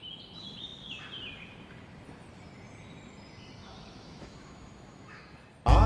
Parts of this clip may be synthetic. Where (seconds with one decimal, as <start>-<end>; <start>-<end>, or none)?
3.6-5.2